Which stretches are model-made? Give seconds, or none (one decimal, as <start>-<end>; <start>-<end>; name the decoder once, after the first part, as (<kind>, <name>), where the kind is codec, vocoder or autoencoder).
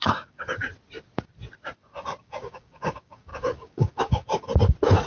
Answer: 0.0-0.7 (codec, DAC); 2.2-4.5